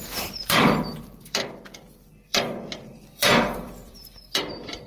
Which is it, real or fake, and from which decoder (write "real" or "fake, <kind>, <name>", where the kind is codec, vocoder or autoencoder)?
fake, vocoder, BigVGAN v2